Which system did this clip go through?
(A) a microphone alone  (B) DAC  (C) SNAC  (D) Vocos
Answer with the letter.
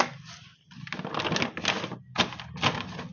A